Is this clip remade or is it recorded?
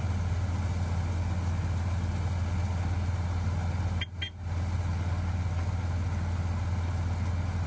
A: recorded